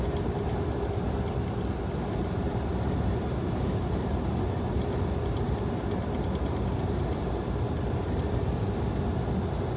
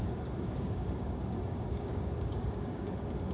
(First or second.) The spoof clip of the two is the second